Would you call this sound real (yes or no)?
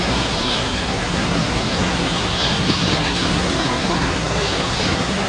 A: no